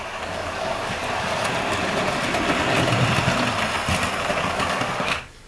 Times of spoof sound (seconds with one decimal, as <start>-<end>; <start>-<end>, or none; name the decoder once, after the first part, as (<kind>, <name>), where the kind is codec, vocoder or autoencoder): 0.0-1.0 (codec, DAC); 4.3-5.5